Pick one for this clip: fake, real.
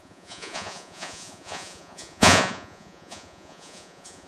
fake